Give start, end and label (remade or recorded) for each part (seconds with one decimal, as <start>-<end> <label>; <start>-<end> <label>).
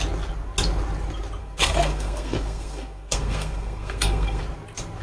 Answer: 0.0-1.4 recorded; 1.4-4.4 remade; 4.4-5.0 recorded